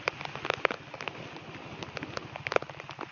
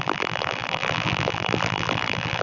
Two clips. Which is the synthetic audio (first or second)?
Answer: second